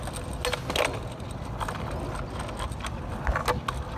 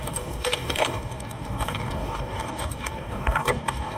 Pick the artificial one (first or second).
second